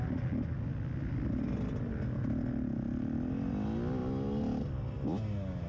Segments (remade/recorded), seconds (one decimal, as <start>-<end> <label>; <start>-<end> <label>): 0.0-5.7 recorded